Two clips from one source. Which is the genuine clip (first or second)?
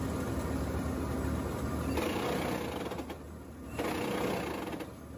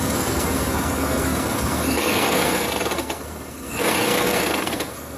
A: first